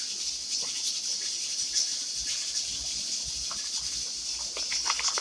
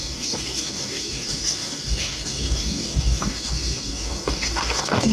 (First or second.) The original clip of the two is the first